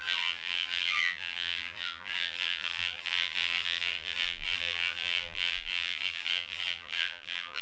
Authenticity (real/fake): fake